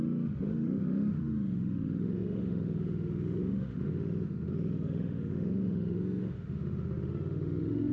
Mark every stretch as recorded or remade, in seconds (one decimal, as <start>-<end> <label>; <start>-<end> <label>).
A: 0.0-7.9 remade

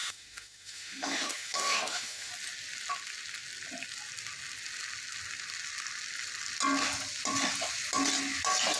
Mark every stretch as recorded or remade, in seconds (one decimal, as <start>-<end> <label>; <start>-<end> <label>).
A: 0.0-2.3 remade; 2.3-8.8 recorded

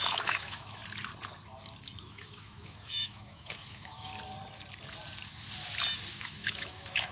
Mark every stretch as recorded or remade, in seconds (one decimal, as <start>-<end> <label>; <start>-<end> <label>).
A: 0.0-0.8 remade; 0.8-2.0 recorded; 2.0-4.1 remade; 4.1-6.1 recorded; 6.1-7.1 remade

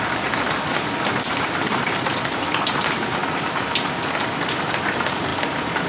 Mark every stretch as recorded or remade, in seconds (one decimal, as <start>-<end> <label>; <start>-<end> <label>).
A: 0.0-5.9 recorded

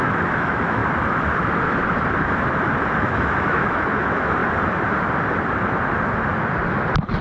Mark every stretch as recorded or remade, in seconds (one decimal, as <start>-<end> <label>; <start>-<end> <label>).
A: 0.0-0.8 remade; 0.8-3.0 recorded; 3.0-4.4 remade; 4.4-7.2 recorded

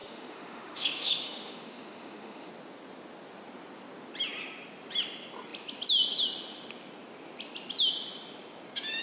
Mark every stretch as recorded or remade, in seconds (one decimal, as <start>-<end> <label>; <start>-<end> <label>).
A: 0.0-2.5 remade; 2.5-9.0 recorded

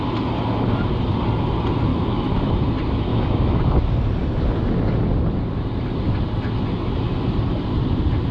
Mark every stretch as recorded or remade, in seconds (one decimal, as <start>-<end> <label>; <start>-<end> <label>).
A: 0.0-1.9 recorded; 1.9-2.5 remade; 2.5-3.1 recorded; 3.1-3.6 remade; 3.6-8.3 recorded